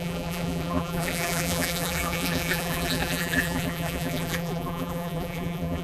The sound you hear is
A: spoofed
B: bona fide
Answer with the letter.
A